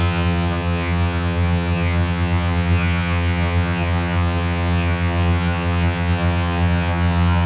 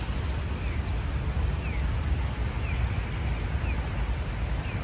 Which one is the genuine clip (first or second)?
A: second